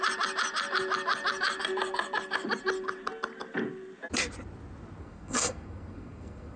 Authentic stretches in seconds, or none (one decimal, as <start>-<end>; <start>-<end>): 0.0-5.0